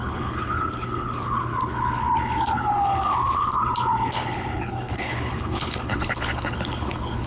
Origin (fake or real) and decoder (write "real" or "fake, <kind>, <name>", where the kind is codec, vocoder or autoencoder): fake, codec, HILCodec